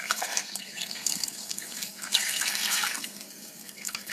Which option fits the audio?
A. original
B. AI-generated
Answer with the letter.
B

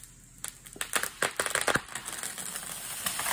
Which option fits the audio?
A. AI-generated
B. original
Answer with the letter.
B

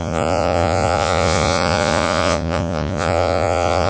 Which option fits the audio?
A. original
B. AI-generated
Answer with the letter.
B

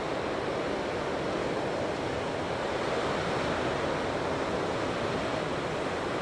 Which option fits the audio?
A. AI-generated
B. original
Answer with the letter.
B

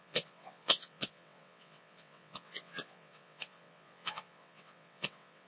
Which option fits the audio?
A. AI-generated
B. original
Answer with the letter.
A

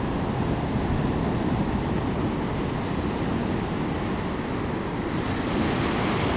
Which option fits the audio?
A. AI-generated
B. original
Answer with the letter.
B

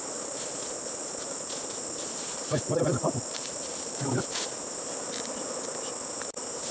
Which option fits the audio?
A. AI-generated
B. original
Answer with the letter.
B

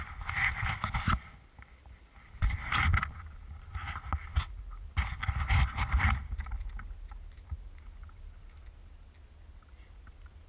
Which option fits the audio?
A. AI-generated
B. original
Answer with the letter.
B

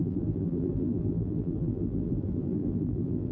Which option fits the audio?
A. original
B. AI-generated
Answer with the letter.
B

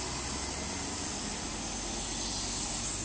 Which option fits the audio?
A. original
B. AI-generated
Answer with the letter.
A